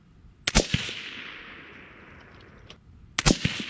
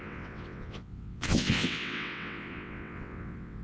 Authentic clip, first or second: first